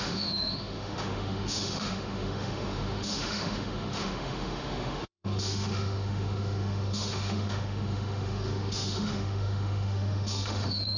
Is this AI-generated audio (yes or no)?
yes